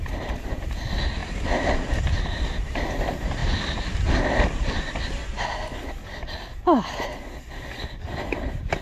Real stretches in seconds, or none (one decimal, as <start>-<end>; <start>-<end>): 0.0-8.8